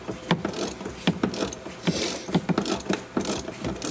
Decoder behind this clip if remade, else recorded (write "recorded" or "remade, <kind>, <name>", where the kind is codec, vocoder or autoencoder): recorded